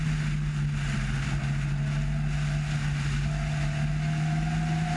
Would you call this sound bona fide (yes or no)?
yes